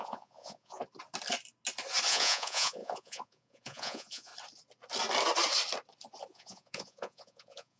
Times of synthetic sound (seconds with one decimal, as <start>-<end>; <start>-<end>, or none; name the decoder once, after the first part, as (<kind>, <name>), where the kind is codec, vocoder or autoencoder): 0.0-0.8 (vocoder, Vocos); 2.1-4.3; 6.3-7.8